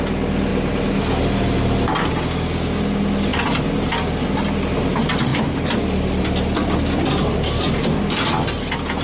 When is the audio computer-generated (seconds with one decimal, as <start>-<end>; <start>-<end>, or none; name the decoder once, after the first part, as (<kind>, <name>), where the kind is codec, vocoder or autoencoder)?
none